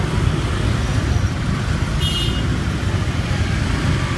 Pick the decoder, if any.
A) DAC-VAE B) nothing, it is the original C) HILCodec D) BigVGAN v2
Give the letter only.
B